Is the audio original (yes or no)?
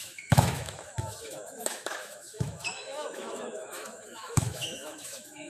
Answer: no